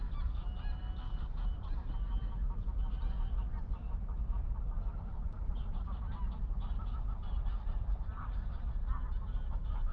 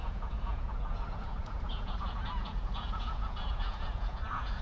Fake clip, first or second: second